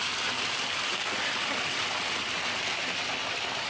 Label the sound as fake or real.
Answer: real